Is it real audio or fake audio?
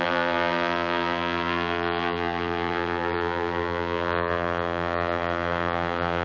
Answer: fake